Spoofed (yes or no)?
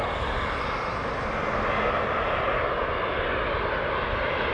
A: no